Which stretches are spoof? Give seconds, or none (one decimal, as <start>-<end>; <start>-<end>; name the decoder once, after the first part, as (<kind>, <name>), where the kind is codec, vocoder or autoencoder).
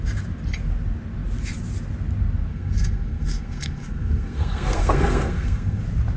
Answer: 2.5-5.8 (codec, SNAC)